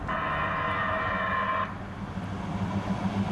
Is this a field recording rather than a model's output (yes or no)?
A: yes